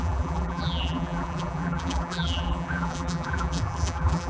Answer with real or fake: fake